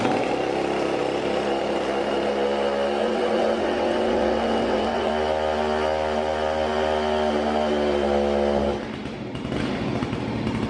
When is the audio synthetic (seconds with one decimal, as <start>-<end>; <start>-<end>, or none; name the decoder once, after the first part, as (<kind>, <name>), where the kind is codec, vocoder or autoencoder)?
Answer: 3.0-5.1 (vocoder, WaveNeXt)